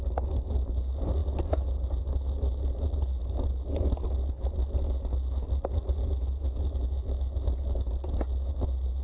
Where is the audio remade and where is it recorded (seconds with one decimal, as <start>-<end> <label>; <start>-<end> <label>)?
0.0-9.0 recorded